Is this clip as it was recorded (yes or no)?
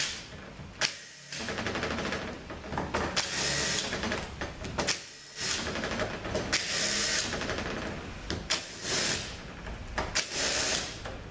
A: yes